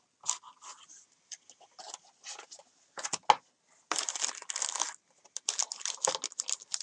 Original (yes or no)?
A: yes